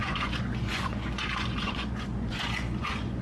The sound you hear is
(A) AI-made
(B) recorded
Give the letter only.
A